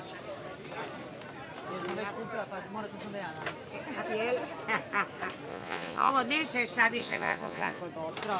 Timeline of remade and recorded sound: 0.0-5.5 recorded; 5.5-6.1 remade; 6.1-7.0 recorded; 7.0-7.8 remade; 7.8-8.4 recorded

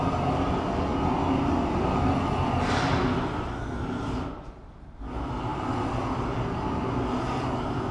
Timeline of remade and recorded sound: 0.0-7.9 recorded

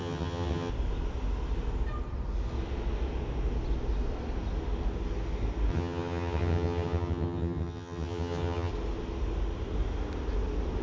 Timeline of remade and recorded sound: 0.0-0.7 remade; 0.7-5.7 recorded; 5.7-8.7 remade; 8.7-10.8 recorded